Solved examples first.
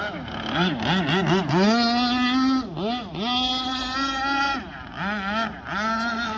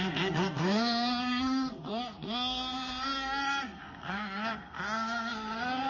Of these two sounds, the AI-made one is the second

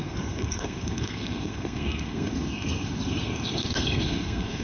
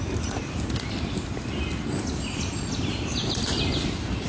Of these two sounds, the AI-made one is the first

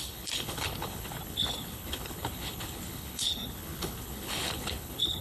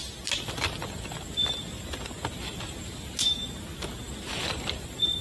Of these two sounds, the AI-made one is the first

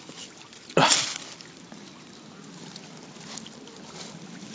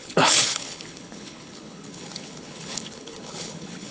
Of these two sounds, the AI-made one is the second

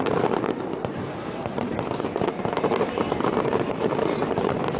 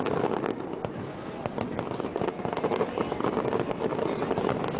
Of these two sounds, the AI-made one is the first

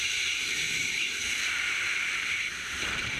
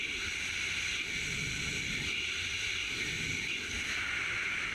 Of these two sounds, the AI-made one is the first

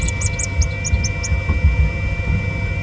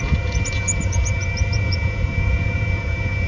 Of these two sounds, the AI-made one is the second